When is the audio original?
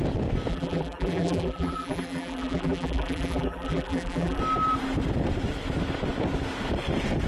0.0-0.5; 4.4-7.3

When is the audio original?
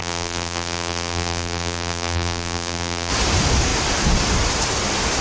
3.1-5.2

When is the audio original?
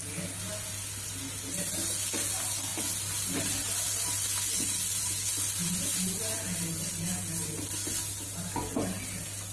0.0-9.5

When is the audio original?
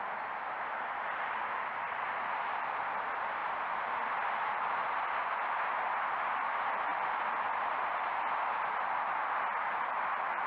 0.0-10.5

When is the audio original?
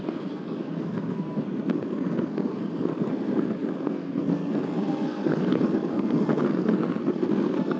none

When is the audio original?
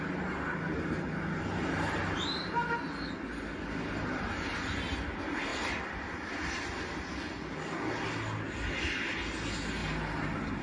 0.0-5.5; 6.8-10.6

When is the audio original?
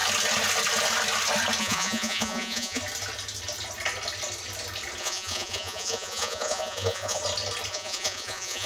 0.0-1.6; 2.8-5.0; 7.2-7.7